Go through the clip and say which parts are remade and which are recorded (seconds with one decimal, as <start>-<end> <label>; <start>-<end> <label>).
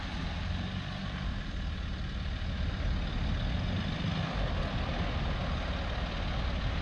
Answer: 0.0-6.8 recorded